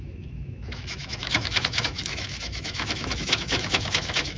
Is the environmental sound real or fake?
fake